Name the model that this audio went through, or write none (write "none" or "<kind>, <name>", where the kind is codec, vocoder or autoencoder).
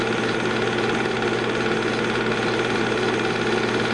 none